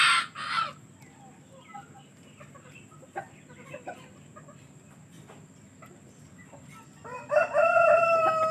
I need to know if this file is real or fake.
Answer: real